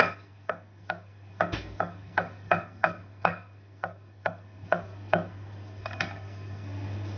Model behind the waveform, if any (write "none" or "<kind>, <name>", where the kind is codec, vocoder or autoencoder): codec, SNAC